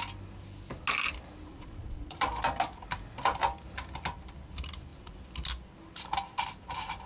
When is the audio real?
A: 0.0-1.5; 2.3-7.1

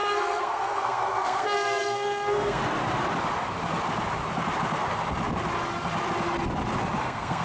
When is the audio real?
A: 2.6-7.0